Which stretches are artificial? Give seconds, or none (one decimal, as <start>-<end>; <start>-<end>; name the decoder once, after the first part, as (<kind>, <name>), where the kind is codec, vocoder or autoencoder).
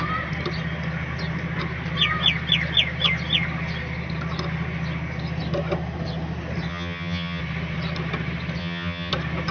6.7-7.4 (vocoder, HiFi-GAN); 8.6-9.1